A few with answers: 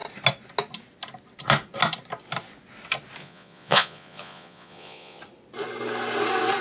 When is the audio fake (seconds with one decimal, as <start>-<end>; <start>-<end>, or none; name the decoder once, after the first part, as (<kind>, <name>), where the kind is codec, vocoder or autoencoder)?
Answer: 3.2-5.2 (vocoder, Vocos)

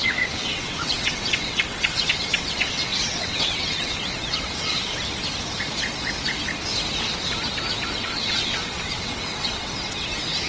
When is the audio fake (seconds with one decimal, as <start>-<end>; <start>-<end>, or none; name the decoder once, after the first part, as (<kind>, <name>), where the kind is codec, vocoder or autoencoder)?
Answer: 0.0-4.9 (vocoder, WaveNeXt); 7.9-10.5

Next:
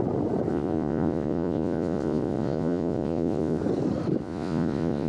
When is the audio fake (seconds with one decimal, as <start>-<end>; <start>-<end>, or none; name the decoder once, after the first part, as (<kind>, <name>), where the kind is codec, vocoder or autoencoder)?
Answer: 0.5-3.6 (vocoder, Vocos); 4.2-5.1

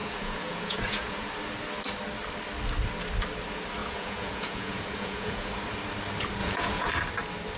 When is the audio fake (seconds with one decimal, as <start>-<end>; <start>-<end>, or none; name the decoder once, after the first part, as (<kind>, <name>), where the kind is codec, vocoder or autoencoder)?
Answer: 0.0-1.3 (vocoder, Vocos); 3.8-5.5; 6.4-6.9

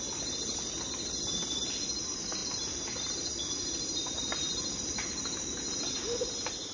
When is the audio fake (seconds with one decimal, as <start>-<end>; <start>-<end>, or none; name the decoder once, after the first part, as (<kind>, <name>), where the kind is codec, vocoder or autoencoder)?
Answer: 2.4-6.7 (vocoder, BigVGAN v2)

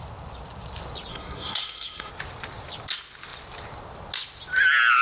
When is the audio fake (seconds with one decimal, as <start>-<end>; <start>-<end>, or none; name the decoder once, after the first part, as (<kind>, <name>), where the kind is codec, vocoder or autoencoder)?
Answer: 1.1-2.1 (codec, SNAC)

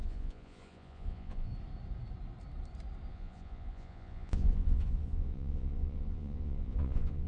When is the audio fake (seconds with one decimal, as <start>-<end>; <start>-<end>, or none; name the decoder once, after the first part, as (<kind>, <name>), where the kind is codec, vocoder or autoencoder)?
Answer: 0.0-1.5 (vocoder, Vocos); 3.1-7.3